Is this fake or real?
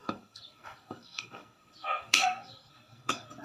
fake